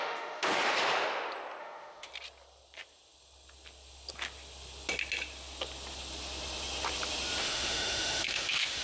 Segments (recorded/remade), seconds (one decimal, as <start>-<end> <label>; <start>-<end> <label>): 0.0-0.6 remade; 0.6-1.6 recorded; 1.6-2.1 remade; 2.1-7.4 recorded; 7.4-8.8 remade